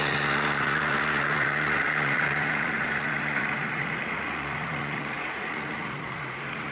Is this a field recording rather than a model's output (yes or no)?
no